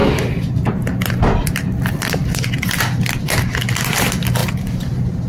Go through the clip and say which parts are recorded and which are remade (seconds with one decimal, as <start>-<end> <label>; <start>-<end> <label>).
0.0-4.4 recorded; 4.4-5.3 remade